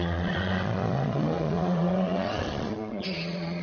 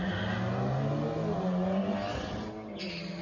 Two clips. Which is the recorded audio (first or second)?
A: second